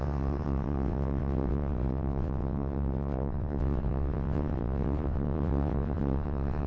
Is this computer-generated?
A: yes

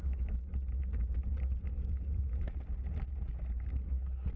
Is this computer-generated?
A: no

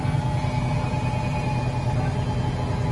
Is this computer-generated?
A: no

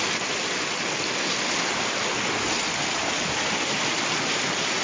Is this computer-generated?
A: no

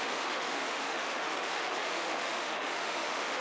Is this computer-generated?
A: yes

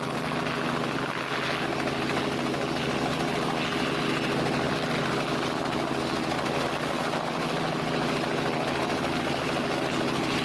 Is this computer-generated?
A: no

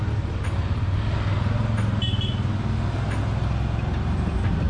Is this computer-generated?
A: no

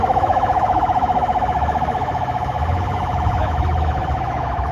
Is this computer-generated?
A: yes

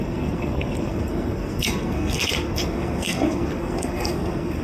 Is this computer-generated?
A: yes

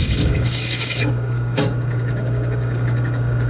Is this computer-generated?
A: yes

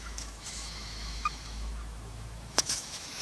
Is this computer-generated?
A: yes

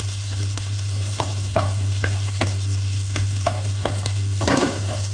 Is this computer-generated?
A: yes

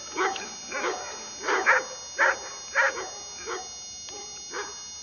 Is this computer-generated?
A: no